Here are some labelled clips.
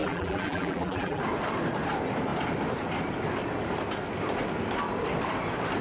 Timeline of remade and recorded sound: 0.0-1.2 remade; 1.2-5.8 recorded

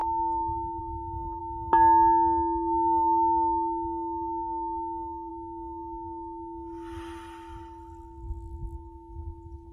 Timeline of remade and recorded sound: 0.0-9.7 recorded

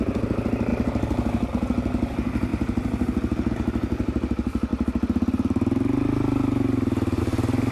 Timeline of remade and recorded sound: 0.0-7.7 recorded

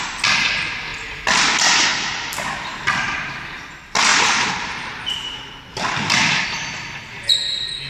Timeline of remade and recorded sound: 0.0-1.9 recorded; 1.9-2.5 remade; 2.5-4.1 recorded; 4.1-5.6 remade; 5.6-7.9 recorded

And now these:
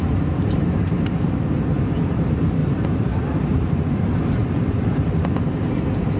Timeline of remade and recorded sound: 0.0-2.6 remade; 2.6-3.3 recorded; 3.3-6.2 remade

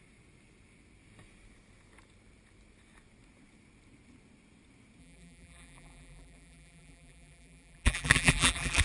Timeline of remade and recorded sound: 0.0-5.0 recorded; 5.0-8.8 remade